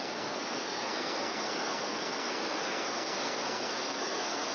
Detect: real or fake fake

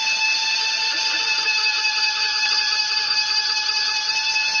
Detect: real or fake real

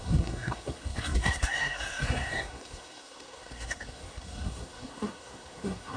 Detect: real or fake fake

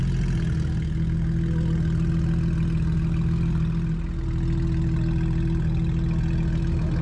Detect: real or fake real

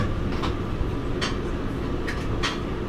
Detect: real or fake real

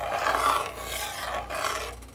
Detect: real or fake real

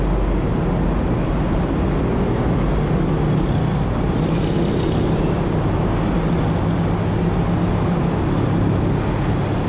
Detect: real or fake real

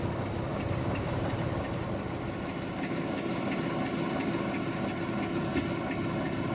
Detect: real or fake real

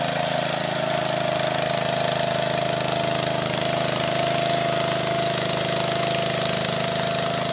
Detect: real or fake real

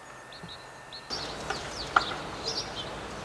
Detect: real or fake real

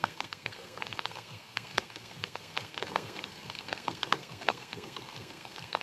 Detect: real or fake fake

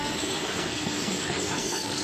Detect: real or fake fake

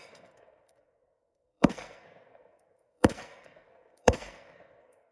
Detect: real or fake fake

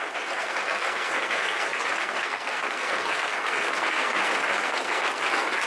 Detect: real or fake fake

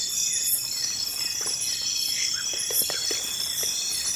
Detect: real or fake real